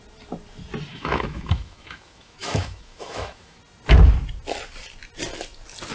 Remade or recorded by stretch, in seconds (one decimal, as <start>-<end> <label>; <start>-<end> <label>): 0.0-0.9 recorded; 0.9-3.6 remade; 3.6-5.9 recorded

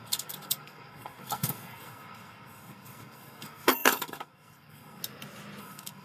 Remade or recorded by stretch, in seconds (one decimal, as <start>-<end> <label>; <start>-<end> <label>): 0.0-5.0 remade; 5.0-5.6 recorded; 5.6-6.0 remade

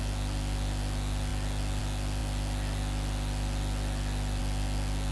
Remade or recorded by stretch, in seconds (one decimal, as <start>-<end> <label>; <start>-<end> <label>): 0.0-5.1 recorded

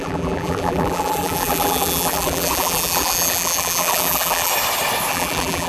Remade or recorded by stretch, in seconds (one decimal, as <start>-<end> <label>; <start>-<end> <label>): 0.0-4.5 remade; 4.5-5.1 recorded; 5.1-5.7 remade

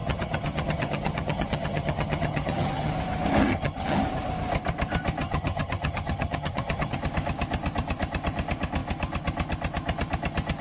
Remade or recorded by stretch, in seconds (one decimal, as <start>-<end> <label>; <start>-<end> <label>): 0.0-2.9 remade; 2.9-3.4 recorded; 3.4-4.0 remade; 4.0-5.2 recorded; 5.2-7.0 remade; 7.0-10.6 recorded

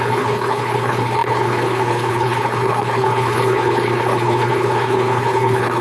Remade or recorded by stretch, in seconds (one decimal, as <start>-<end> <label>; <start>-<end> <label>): 0.0-5.8 remade

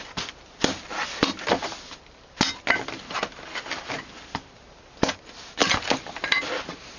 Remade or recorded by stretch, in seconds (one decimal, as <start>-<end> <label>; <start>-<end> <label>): 0.0-7.0 recorded